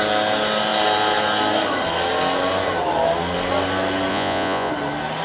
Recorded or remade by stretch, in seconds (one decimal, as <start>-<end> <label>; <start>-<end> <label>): 0.0-4.1 recorded; 4.1-4.7 remade; 4.7-5.2 recorded